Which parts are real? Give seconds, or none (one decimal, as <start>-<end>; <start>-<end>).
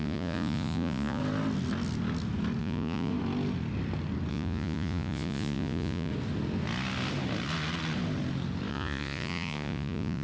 1.2-2.6; 3.1-4.3; 6.1-8.7